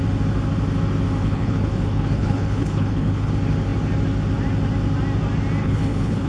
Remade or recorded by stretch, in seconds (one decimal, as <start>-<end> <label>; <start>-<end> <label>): 0.0-1.2 recorded; 1.2-3.3 remade; 3.3-5.6 recorded; 5.6-6.3 remade